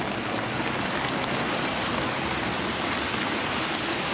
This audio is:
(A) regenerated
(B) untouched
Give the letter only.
B